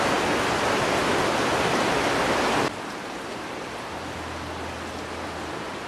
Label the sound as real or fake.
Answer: real